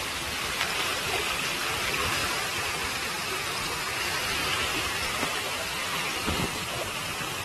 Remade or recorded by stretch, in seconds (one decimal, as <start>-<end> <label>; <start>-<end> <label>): 0.0-2.2 recorded; 2.2-3.3 remade; 3.3-4.4 recorded; 4.4-5.5 remade; 5.5-7.4 recorded